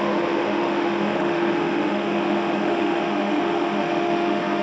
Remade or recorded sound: remade